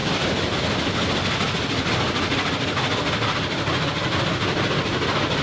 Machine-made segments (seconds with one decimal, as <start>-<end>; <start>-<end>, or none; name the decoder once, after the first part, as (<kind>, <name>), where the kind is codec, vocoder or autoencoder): none